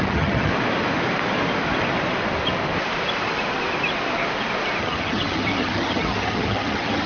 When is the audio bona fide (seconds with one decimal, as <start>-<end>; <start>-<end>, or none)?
0.5-4.8